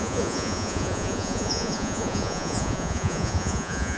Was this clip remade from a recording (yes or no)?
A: yes